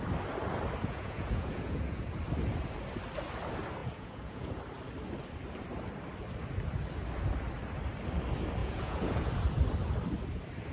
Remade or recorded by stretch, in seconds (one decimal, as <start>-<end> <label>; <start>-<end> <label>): 0.0-0.8 recorded; 0.8-2.2 remade; 2.2-3.8 recorded; 3.8-4.6 remade; 4.6-8.6 recorded; 8.6-9.3 remade; 9.3-10.7 recorded